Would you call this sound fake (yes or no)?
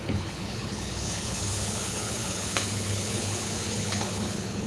yes